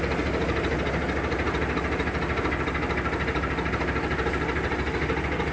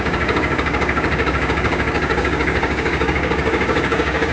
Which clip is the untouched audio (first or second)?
first